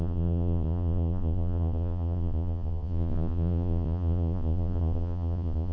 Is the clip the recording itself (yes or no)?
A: no